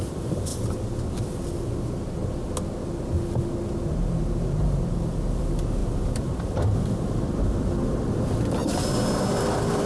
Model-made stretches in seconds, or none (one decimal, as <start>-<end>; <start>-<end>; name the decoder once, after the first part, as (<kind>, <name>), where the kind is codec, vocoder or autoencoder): 0.0-0.5 (vocoder, BigVGAN v2); 1.5-2.2; 5.3-5.8; 8.1-8.6; 9.5-9.9